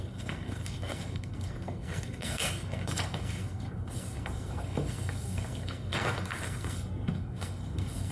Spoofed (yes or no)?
yes